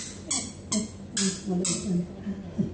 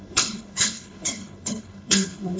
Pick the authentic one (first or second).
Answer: first